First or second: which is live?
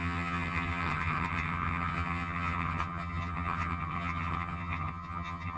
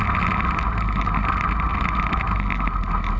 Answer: second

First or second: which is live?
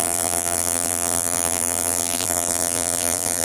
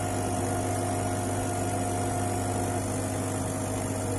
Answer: second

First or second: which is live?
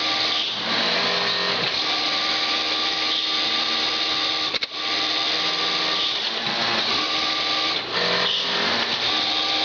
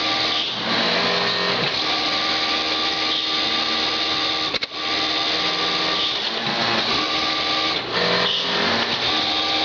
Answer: second